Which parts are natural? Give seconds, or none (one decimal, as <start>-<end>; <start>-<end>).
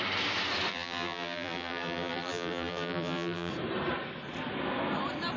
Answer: 0.0-0.7; 3.5-5.4